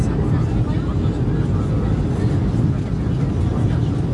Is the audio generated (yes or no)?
no